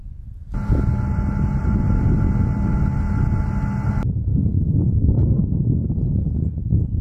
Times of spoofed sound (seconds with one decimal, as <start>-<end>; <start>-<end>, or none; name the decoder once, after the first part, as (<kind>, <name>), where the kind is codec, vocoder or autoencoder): 4.3-5.9 (codec, SNAC)